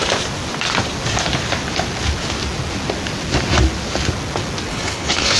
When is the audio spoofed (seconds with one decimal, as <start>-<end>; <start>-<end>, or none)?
4.7-5.4